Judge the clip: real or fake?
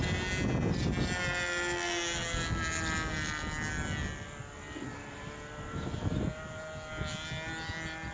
real